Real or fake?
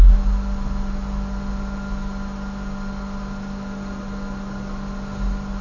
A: real